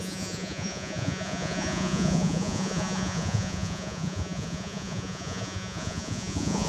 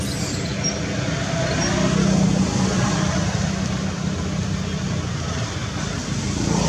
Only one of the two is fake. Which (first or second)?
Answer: first